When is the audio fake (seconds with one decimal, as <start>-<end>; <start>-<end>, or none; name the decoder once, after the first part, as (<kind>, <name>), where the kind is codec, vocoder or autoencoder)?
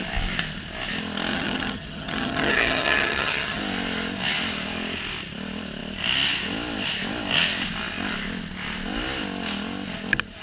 1.3-3.6 (vocoder, HiFi-GAN)